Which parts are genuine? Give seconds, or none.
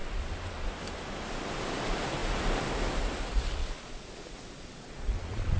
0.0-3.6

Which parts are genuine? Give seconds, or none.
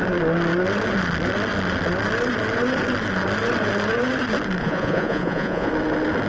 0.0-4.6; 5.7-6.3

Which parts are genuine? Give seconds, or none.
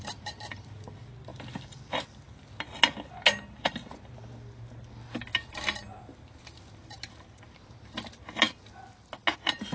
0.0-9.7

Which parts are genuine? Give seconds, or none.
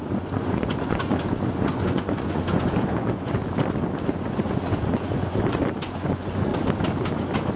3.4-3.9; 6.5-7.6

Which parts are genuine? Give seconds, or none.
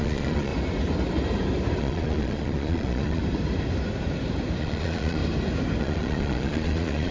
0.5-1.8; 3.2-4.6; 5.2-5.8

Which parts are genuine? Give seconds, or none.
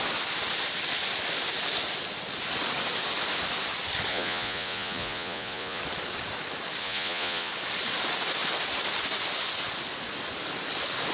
0.0-4.1; 5.8-6.8; 7.5-11.1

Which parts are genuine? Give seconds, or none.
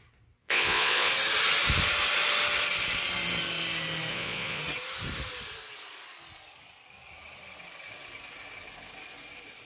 0.0-0.4; 1.1-4.1; 4.6-9.7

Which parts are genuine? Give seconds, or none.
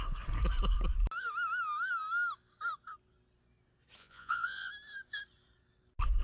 0.0-4.0; 4.7-6.2